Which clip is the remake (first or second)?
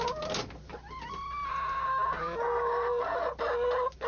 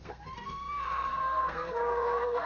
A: second